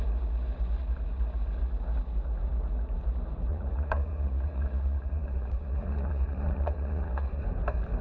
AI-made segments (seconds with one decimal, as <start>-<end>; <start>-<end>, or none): 3.5-7.4